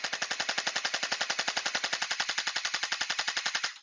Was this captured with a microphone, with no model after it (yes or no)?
yes